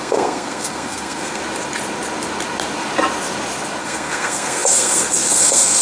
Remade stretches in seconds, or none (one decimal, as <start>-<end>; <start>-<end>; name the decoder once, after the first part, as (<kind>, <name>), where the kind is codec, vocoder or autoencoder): 0.0-1.4 (codec, SNAC); 3.8-5.8